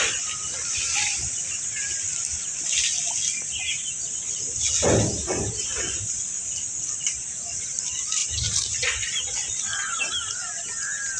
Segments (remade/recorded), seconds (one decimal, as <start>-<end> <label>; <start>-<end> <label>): 0.0-11.2 recorded